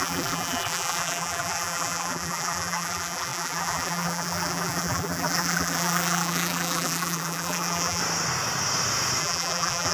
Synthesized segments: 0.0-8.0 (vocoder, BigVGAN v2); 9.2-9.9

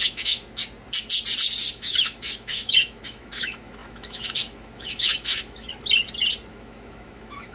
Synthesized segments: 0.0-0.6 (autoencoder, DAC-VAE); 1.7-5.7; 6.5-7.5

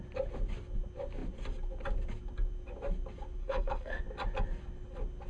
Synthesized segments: 3.4-4.0 (codec, SNAC)

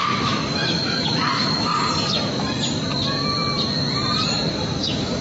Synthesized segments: 0.0-1.7 (autoencoder, DAC-VAE); 4.8-5.2

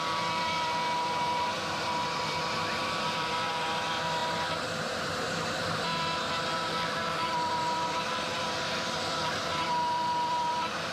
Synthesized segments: 0.0-10.9 (vocoder, BigVGAN v2)

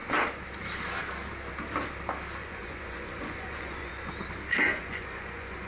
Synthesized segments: 2.4-4.1 (vocoder, Vocos); 4.7-5.7